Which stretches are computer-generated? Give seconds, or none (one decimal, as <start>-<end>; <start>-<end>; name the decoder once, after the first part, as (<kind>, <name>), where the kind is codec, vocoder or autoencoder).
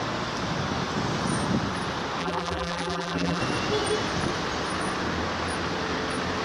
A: 2.2-3.4 (vocoder, BigVGAN v2)